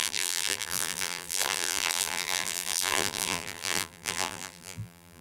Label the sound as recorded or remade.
remade